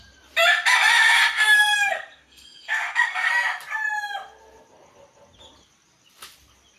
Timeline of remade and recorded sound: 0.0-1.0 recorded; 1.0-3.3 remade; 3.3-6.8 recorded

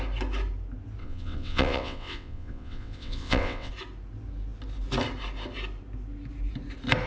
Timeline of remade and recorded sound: 0.0-1.0 recorded; 1.0-3.7 remade; 3.7-7.1 recorded

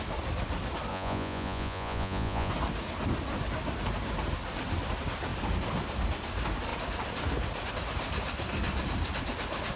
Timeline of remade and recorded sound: 0.0-0.9 recorded; 0.9-2.5 remade; 2.5-9.8 recorded